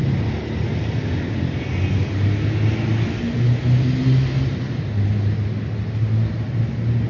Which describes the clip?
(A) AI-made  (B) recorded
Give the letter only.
B